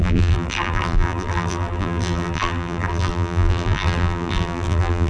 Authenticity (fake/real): fake